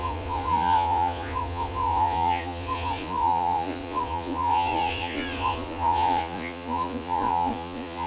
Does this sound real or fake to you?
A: fake